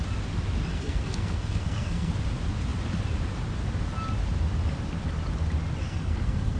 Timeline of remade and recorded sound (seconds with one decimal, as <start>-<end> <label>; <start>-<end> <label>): 0.0-0.7 recorded; 0.7-2.1 remade; 2.1-5.8 recorded; 5.8-6.6 remade